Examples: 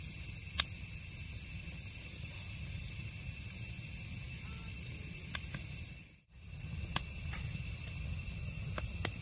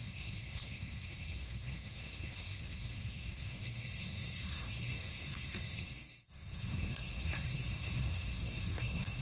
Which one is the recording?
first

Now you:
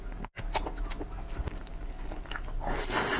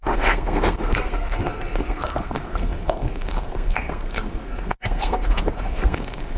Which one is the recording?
first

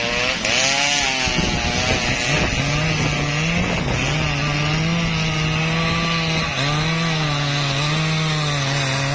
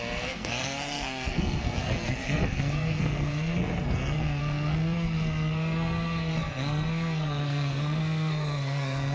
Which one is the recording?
first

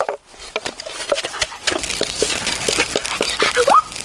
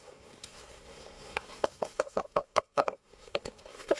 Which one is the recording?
first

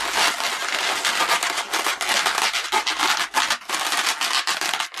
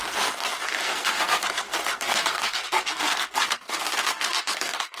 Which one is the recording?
first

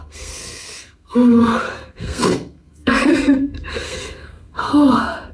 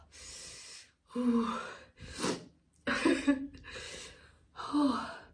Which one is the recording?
second